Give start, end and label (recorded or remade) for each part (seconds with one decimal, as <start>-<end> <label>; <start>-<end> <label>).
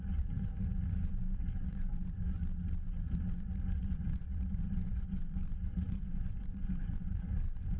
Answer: 0.0-2.4 remade; 2.4-3.0 recorded; 3.0-7.8 remade